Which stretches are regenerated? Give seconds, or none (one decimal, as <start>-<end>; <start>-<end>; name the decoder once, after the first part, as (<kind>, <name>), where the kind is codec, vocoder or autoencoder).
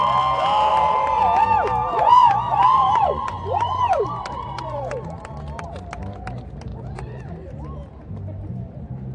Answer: 0.7-1.2 (vocoder, Vocos); 1.9-4.9; 6.7-7.3